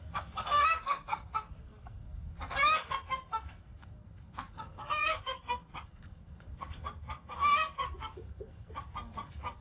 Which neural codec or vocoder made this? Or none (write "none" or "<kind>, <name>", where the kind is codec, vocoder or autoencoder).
codec, SNAC